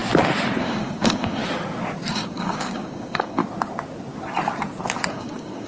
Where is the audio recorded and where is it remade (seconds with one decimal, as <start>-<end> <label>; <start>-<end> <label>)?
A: 0.0-0.6 recorded; 0.6-1.4 remade; 1.4-2.1 recorded; 2.1-3.4 remade; 3.4-5.1 recorded; 5.1-5.7 remade